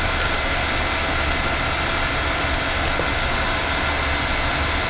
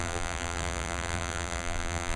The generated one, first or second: second